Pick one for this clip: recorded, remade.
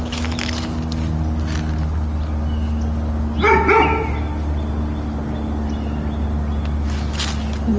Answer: recorded